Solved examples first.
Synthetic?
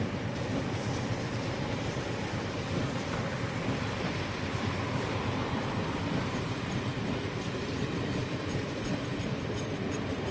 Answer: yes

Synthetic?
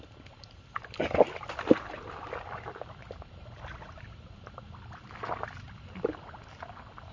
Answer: no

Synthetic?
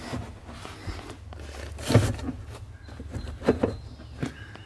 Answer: no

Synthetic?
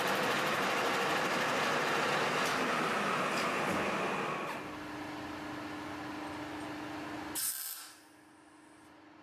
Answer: no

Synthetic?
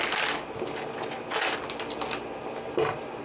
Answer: no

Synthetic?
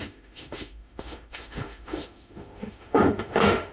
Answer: yes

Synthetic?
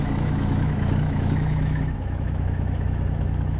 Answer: yes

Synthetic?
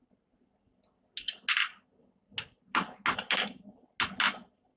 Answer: no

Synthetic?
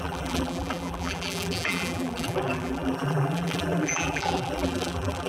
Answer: yes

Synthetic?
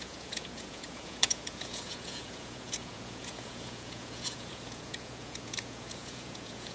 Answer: yes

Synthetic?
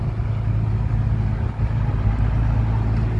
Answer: no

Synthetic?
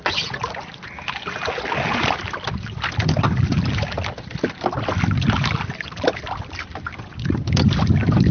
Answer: no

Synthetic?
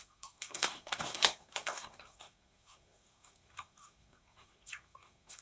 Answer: yes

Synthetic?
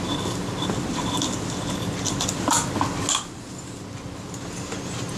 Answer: no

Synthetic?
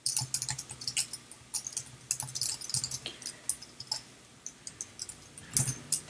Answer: no